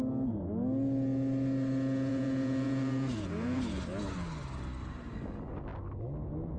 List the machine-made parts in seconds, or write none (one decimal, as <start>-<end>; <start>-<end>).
2.1-3.8